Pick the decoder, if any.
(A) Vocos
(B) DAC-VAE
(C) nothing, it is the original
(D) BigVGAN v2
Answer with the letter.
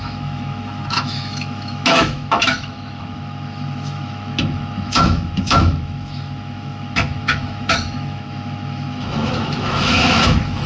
B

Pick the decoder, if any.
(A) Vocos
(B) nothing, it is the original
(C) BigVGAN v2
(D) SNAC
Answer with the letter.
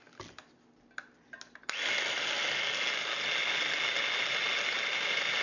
B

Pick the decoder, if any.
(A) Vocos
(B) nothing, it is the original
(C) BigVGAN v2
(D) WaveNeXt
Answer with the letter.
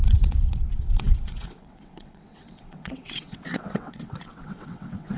D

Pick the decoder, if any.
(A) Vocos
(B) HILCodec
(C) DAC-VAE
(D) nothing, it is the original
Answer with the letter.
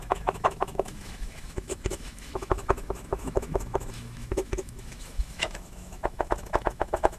C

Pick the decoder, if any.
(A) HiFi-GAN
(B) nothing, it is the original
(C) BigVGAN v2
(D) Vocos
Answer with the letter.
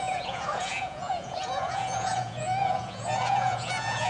D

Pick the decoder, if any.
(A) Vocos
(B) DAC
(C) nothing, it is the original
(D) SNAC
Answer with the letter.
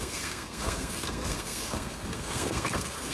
D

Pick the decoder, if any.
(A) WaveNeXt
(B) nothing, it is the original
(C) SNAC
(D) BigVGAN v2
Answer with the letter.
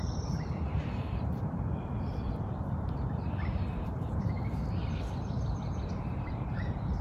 D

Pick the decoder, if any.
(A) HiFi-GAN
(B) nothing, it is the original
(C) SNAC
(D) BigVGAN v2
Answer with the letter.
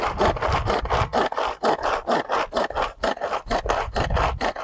B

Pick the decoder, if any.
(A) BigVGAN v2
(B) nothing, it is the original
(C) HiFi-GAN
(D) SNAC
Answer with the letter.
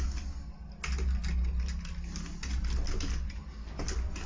B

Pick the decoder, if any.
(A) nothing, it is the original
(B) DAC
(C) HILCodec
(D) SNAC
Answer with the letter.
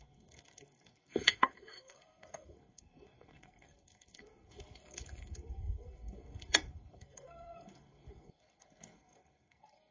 D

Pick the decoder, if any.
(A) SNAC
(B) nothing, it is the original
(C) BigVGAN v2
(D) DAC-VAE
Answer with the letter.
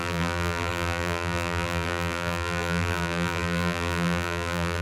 C